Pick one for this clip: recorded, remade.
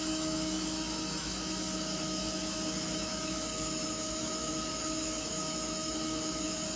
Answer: remade